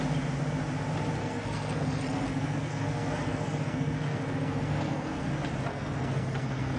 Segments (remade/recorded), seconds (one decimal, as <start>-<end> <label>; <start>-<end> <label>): 0.0-1.2 recorded; 1.2-5.3 remade; 5.3-5.7 recorded; 5.7-6.8 remade